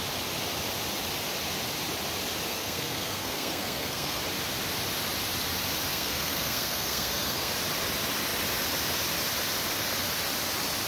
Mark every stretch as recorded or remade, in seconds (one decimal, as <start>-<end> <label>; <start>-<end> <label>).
0.0-2.5 recorded; 2.5-4.2 remade; 4.2-5.9 recorded; 5.9-7.5 remade; 7.5-10.9 recorded

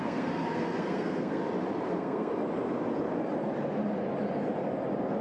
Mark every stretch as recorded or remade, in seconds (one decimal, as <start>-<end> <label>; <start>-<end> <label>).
0.0-1.4 remade; 1.4-1.9 recorded; 1.9-2.3 remade; 2.3-5.2 recorded

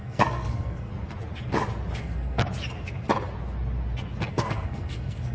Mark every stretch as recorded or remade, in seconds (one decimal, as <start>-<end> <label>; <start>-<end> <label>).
0.0-0.9 remade; 0.9-2.0 recorded; 2.0-2.4 remade; 2.4-4.3 recorded; 4.3-5.3 remade

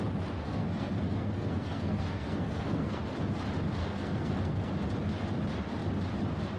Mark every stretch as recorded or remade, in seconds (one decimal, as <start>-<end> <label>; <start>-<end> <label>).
0.0-0.4 recorded; 0.4-3.0 remade; 3.0-3.8 recorded; 3.8-4.7 remade; 4.7-6.6 recorded

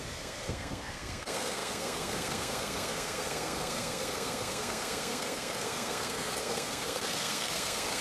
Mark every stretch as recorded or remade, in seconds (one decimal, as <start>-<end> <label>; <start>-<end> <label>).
0.0-8.0 remade

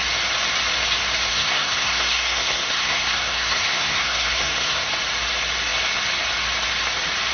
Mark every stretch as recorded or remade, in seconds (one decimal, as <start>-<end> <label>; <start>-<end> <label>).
0.0-1.3 recorded; 1.3-4.9 remade; 4.9-7.3 recorded